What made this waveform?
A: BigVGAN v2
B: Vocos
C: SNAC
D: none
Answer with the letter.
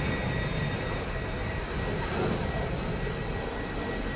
D